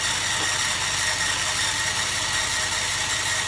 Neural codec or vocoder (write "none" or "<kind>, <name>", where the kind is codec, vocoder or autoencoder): none